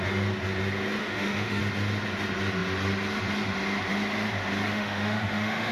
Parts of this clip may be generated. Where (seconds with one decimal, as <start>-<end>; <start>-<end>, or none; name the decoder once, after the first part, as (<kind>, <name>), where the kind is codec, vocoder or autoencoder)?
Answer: 1.0-1.6 (autoencoder, DAC-VAE); 4.7-5.7